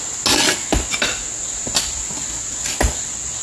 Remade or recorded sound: recorded